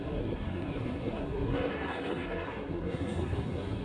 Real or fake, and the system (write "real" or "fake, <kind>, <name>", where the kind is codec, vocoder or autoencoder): fake, codec, SNAC